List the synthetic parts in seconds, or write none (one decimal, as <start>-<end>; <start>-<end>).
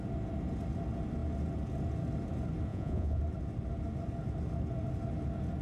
2.7-3.2